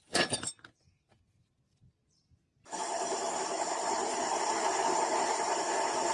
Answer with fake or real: real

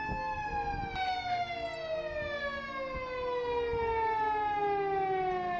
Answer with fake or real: real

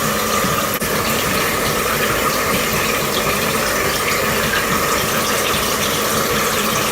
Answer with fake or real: real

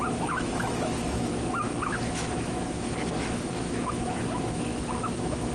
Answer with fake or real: fake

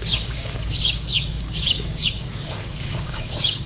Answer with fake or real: fake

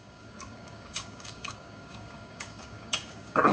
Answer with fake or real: fake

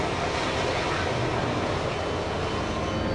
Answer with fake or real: real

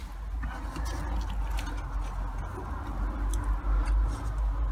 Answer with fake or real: real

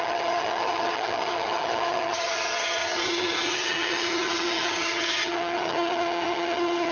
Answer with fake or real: fake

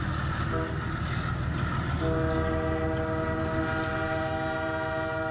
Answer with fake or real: real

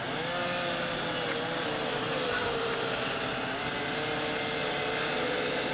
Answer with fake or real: real